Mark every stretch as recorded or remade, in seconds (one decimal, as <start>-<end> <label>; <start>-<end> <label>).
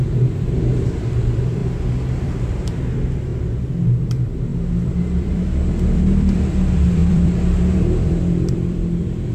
0.0-3.3 remade; 3.3-3.9 recorded; 3.9-9.3 remade